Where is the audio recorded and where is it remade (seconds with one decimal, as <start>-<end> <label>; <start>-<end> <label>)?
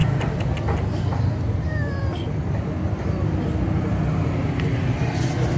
0.0-0.5 remade; 0.5-5.6 recorded